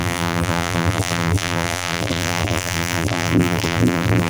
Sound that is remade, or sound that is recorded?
remade